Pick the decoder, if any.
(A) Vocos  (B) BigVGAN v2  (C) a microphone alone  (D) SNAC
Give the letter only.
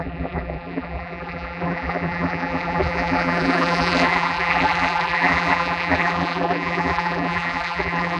B